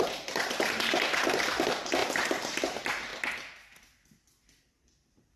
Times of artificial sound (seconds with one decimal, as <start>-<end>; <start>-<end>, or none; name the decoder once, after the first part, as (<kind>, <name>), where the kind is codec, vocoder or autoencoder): 0.0-3.1 (vocoder, BigVGAN v2); 4.7-5.4